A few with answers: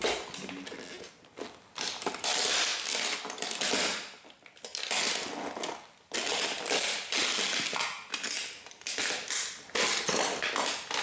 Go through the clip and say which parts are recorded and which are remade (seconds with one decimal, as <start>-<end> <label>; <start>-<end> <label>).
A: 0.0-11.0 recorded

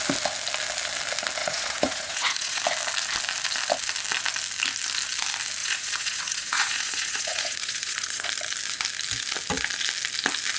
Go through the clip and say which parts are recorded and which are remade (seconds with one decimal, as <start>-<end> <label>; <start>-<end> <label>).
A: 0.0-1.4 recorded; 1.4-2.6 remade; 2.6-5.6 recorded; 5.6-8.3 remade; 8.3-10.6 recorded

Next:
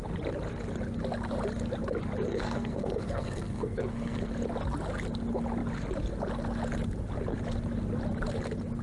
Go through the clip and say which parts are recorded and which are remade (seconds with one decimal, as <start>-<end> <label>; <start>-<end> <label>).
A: 0.0-2.3 recorded; 2.3-4.3 remade; 4.3-8.8 recorded

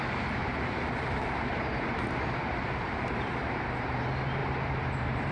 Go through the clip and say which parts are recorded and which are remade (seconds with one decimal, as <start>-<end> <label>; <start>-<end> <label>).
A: 0.0-0.4 recorded; 0.4-3.6 remade; 3.6-4.4 recorded; 4.4-5.3 remade

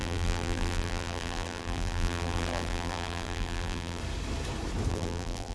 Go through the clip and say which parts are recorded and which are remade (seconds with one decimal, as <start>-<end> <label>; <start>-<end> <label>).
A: 0.0-4.0 remade; 4.0-4.9 recorded; 4.9-5.5 remade